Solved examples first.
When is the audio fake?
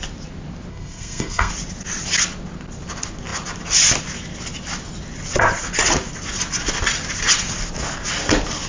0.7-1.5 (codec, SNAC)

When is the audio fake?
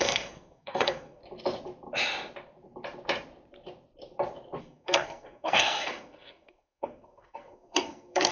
0.0-1.2 (codec, SNAC); 4.6-8.3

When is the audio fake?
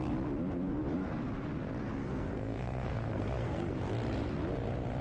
2.0-3.8 (codec, SNAC)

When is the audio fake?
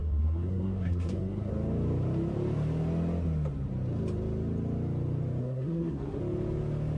0.0-1.5 (codec, SNAC); 5.4-6.2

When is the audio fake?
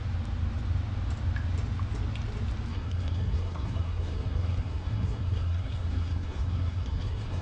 2.7-7.4 (codec, SNAC)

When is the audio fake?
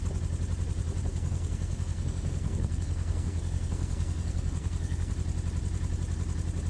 1.1-5.1 (codec, SNAC)